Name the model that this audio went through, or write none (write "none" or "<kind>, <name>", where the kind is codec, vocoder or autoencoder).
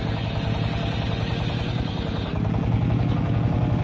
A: none